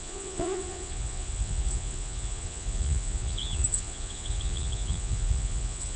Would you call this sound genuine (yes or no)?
no